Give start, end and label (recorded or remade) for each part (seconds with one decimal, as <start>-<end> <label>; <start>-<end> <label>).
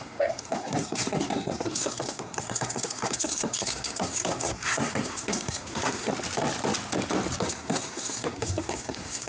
0.0-6.1 remade; 6.1-7.4 recorded; 7.4-9.3 remade